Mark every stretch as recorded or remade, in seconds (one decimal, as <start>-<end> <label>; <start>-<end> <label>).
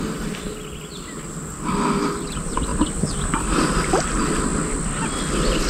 0.0-5.7 recorded